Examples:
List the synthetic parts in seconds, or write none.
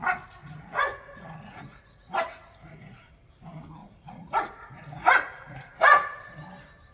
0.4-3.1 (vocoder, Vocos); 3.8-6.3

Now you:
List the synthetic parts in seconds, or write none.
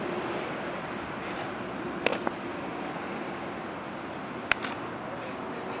none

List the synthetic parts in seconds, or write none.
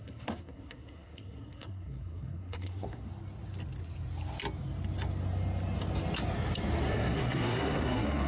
0.0-3.1 (codec, SNAC); 6.9-8.3